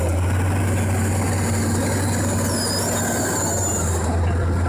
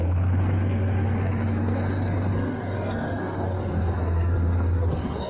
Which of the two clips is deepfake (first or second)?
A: second